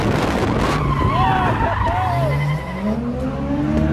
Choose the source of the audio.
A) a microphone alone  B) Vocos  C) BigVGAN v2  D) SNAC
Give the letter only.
A